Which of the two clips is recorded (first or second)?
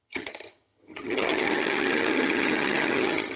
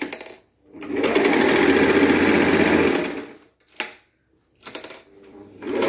second